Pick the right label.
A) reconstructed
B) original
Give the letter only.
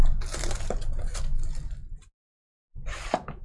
B